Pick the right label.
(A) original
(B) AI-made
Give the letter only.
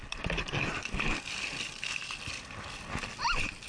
A